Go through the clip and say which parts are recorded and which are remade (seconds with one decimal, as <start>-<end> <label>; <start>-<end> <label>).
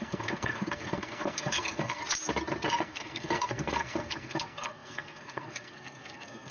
0.0-2.0 remade; 2.0-2.7 recorded; 2.7-6.5 remade